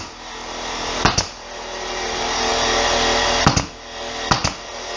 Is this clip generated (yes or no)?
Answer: no